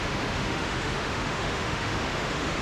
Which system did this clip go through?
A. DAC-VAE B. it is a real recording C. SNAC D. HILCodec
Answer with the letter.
A